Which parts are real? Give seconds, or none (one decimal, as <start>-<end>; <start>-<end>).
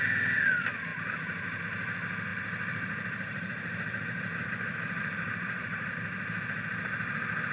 0.0-0.9; 1.6-2.3; 5.9-7.5